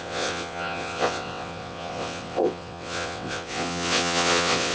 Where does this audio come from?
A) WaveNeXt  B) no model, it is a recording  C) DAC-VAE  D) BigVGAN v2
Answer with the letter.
A